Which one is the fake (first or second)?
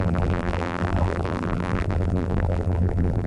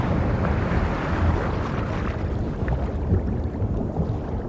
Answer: first